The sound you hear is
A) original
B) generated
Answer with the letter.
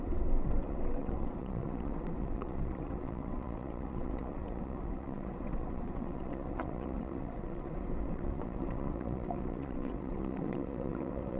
B